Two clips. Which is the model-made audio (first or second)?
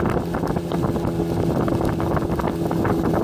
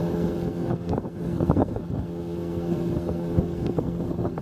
second